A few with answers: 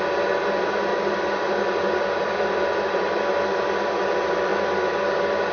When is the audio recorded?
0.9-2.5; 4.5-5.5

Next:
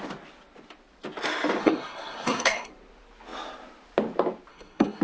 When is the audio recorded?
0.0-1.6; 2.7-4.5

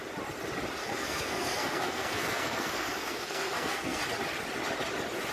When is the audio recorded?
0.0-0.8; 4.0-5.3

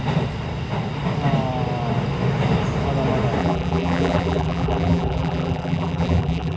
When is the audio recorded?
0.0-3.4

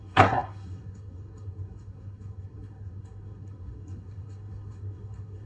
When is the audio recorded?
none